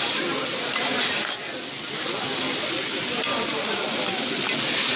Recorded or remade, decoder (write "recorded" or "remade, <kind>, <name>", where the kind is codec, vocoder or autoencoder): recorded